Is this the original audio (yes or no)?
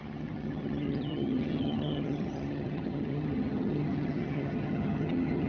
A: no